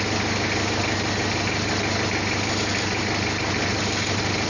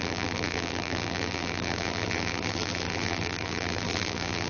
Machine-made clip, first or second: second